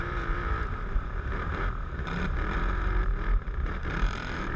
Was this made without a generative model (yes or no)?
no